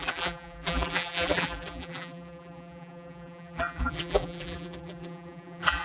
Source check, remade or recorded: remade